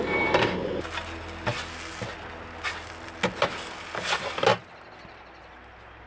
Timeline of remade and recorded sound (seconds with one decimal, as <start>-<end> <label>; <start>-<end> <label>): 0.0-6.1 recorded